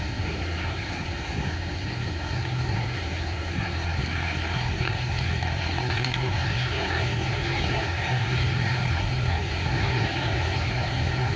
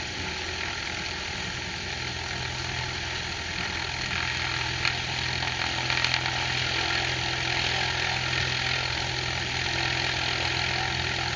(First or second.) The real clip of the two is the second